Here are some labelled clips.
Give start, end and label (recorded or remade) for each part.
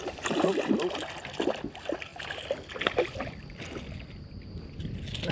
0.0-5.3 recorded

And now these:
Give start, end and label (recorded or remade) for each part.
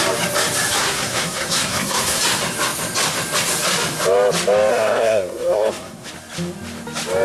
0.0-0.8 recorded; 0.8-2.2 remade; 2.2-4.7 recorded; 4.7-6.1 remade; 6.1-7.2 recorded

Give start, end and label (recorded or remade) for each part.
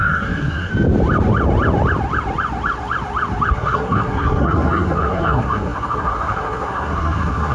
0.0-0.7 remade; 0.7-3.5 recorded; 3.5-7.5 remade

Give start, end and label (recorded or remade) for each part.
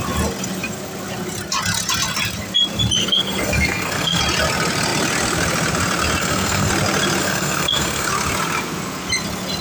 0.0-3.0 recorded; 3.0-4.2 remade; 4.2-6.2 recorded; 6.2-6.7 remade; 6.7-7.2 recorded; 7.2-8.1 remade; 8.1-9.6 recorded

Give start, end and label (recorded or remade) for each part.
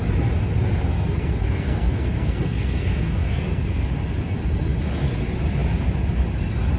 0.0-0.9 recorded; 0.9-3.9 remade; 3.9-6.8 recorded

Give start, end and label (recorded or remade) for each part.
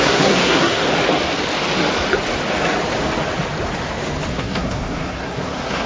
0.0-0.8 remade; 0.8-4.3 recorded; 4.3-5.9 remade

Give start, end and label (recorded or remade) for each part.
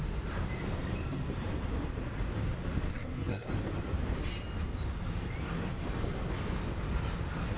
0.0-2.9 recorded; 2.9-3.5 remade; 3.5-7.6 recorded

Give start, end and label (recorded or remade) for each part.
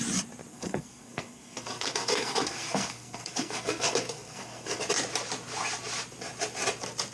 0.0-0.5 recorded; 0.5-4.8 remade; 4.8-7.1 recorded